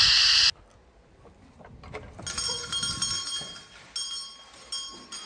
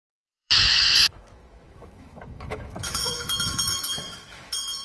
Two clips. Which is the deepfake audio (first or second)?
second